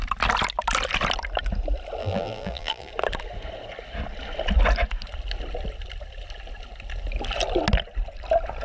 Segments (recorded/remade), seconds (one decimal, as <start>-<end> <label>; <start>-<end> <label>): 0.0-2.0 recorded; 2.0-2.9 remade; 2.9-8.6 recorded